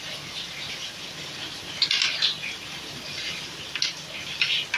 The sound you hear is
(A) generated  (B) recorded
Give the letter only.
B